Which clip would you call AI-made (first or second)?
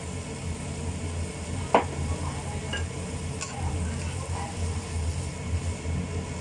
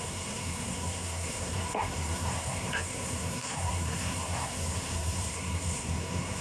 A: second